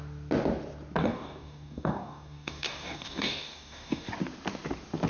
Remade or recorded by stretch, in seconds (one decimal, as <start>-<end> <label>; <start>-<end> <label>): 0.0-1.0 recorded; 1.0-4.1 remade; 4.1-5.1 recorded